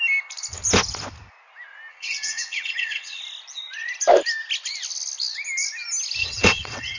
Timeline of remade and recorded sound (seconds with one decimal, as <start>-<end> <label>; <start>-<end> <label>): 0.0-1.9 recorded; 1.9-3.2 remade; 3.2-6.2 recorded; 6.2-7.0 remade